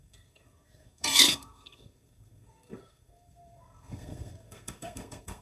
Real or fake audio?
fake